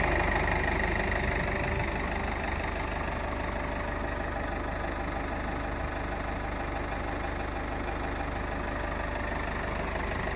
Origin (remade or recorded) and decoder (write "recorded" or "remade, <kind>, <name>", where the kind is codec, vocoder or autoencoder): recorded